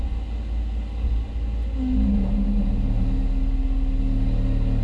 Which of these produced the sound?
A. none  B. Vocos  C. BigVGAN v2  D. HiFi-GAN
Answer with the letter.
A